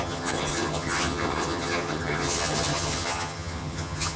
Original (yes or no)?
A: no